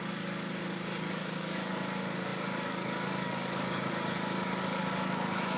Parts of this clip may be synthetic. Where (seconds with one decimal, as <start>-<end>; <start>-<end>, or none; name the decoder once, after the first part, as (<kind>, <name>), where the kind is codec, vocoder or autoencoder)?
0.0-5.6 (codec, DAC)